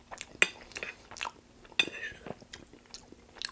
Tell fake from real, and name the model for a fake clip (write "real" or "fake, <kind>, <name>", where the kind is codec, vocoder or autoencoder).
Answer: real